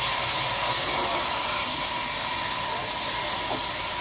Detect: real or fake real